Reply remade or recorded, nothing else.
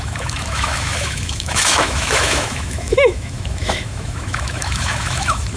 remade